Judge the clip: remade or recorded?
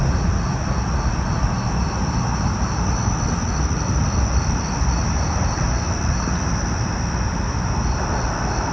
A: recorded